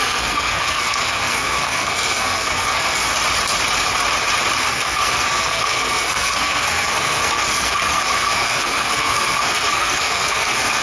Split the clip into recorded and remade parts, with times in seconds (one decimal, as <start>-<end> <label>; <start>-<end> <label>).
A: 0.0-3.1 remade; 3.1-4.6 recorded; 4.6-10.8 remade